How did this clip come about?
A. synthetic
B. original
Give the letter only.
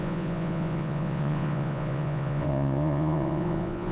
A